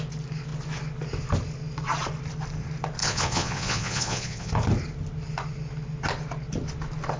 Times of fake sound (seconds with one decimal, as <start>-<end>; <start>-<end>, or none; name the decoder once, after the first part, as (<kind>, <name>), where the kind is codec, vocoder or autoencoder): 3.0-4.5 (vocoder, Vocos)